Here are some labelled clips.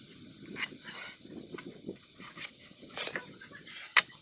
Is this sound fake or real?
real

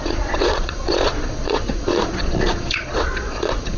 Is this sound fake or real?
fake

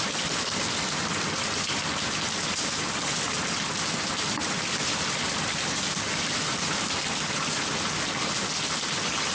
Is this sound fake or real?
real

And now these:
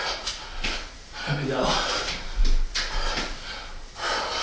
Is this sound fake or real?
real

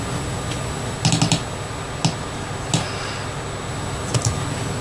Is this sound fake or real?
real